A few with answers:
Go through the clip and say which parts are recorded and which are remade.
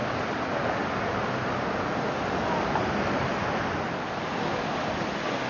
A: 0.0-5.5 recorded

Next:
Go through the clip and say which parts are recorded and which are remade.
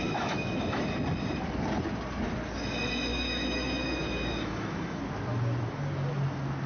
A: 0.0-0.8 remade; 0.8-3.1 recorded; 3.1-5.0 remade; 5.0-6.7 recorded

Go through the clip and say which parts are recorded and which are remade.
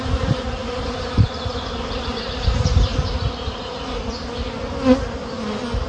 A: 0.0-0.6 recorded; 0.6-4.1 remade; 4.1-5.9 recorded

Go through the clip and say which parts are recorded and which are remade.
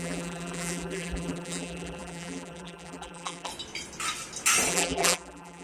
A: 0.0-3.5 remade; 3.5-4.7 recorded; 4.7-5.6 remade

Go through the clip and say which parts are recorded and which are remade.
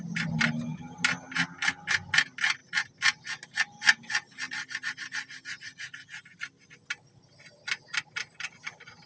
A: 0.0-9.1 recorded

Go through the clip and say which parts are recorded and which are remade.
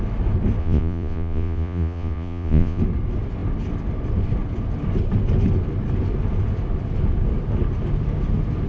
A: 0.0-0.6 recorded; 0.6-2.8 remade; 2.8-8.7 recorded